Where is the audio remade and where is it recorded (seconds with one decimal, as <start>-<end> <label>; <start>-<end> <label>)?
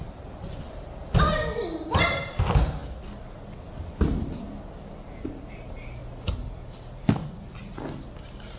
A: 0.0-8.6 recorded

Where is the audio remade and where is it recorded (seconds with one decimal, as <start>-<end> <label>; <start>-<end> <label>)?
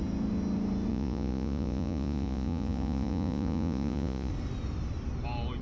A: 0.0-0.9 recorded; 0.9-4.3 remade; 4.3-5.6 recorded